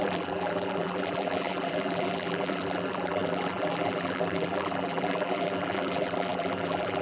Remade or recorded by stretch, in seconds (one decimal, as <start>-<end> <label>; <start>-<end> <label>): 0.0-7.0 remade